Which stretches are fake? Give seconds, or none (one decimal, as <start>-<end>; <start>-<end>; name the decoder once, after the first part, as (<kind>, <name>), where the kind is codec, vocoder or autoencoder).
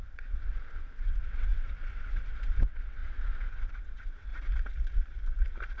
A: 0.0-4.3 (vocoder, WaveNeXt)